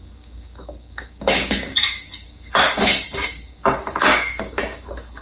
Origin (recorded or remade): remade